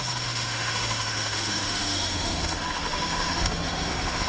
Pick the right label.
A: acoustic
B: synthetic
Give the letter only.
B